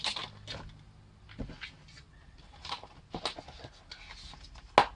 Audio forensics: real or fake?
real